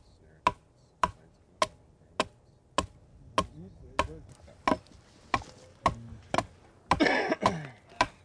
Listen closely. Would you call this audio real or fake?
real